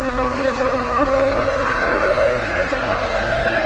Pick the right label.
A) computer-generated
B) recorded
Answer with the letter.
A